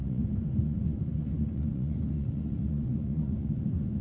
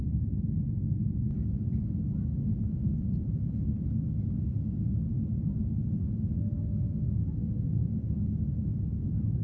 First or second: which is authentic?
second